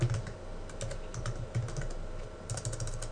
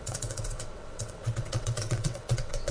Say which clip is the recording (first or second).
first